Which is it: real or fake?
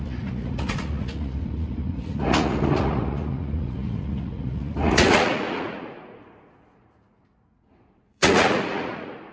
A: fake